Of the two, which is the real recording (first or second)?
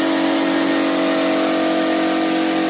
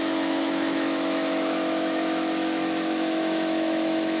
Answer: first